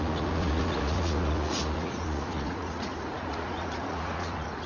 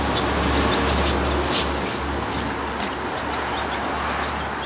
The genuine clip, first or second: second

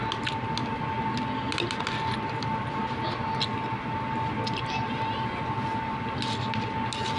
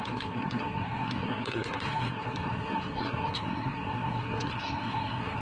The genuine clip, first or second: first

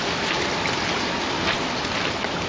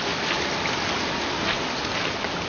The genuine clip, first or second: second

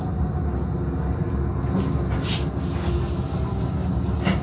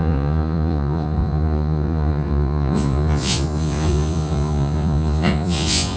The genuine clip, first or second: first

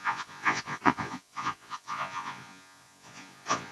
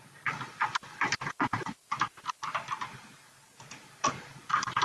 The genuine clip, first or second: second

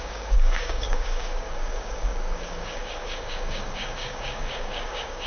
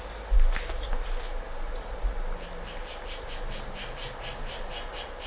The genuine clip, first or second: second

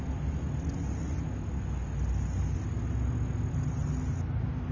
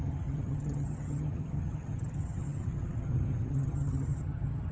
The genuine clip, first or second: first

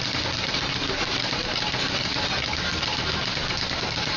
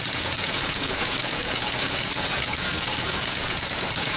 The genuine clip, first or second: first